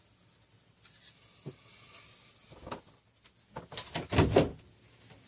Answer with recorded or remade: recorded